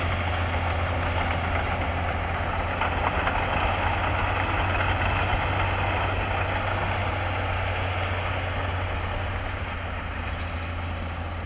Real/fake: real